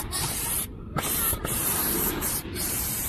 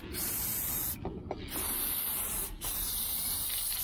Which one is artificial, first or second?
first